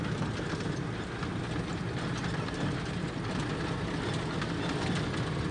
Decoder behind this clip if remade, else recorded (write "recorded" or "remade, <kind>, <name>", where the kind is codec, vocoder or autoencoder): recorded